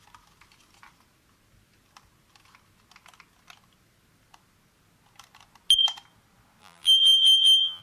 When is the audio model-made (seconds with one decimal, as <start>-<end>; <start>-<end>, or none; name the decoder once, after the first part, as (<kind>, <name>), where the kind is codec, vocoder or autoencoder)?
6.6-7.8 (vocoder, BigVGAN v2)